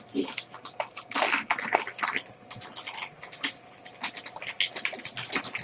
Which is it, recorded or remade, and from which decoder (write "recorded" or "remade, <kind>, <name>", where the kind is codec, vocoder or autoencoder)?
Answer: recorded